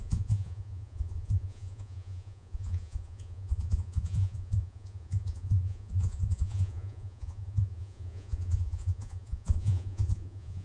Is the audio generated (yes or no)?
yes